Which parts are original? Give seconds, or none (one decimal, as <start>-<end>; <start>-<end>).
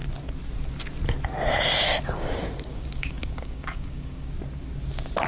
0.0-2.7; 4.3-5.3